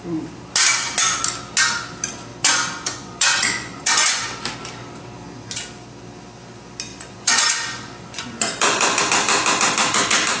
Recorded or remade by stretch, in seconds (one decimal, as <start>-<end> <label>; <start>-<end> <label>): 0.0-2.3 recorded; 2.3-4.2 remade; 4.2-6.9 recorded; 6.9-9.0 remade; 9.0-10.4 recorded